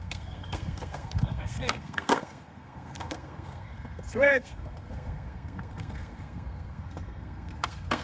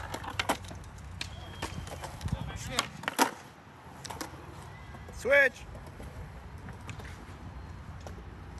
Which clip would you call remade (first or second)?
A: first